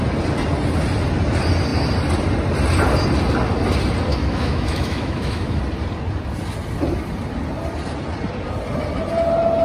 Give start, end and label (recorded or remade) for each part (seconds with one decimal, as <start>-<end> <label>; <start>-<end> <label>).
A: 0.0-4.1 recorded; 4.1-5.6 remade; 5.6-9.6 recorded